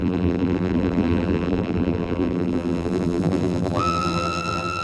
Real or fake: fake